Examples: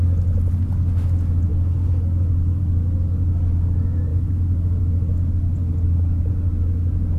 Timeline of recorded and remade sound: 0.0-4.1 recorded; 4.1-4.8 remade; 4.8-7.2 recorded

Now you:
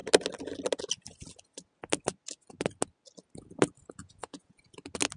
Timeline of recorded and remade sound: 0.0-4.0 recorded; 4.0-4.7 remade; 4.7-5.2 recorded

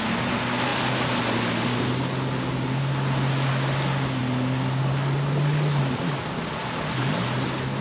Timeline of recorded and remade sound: 0.0-7.8 recorded

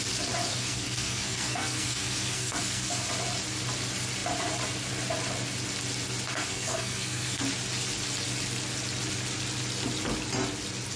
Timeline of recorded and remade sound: 0.0-0.5 recorded; 0.5-3.1 remade; 3.1-6.3 recorded; 6.3-7.4 remade; 7.4-11.0 recorded

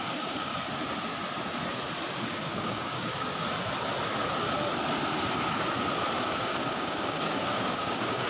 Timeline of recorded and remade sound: 0.0-0.5 remade; 0.5-2.1 recorded; 2.1-3.1 remade; 3.1-6.2 recorded; 6.2-8.3 remade

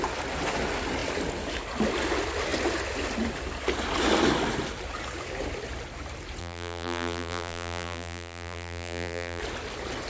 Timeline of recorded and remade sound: 0.0-6.4 recorded; 6.4-9.4 remade; 9.4-10.1 recorded